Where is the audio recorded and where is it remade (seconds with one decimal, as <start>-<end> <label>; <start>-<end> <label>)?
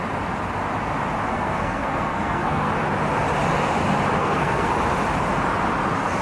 0.0-1.3 recorded; 1.3-2.7 remade; 2.7-4.2 recorded; 4.2-4.7 remade; 4.7-6.2 recorded